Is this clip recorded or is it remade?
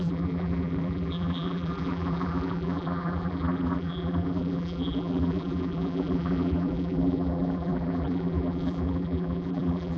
remade